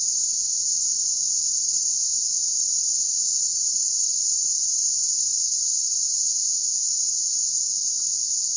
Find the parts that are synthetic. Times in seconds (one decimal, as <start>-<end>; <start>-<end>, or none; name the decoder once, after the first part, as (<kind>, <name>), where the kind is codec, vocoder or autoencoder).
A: 0.9-2.9 (vocoder, Vocos); 3.4-5.4